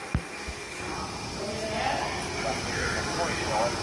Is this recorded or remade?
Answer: recorded